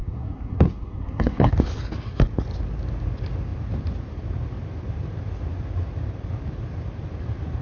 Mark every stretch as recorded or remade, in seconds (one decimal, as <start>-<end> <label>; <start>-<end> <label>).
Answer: 0.0-1.5 remade; 1.5-7.6 recorded